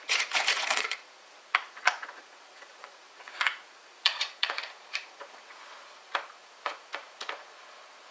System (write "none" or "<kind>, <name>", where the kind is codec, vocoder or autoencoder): vocoder, Vocos